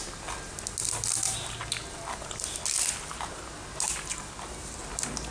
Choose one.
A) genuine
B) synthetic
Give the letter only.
A